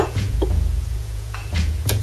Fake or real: fake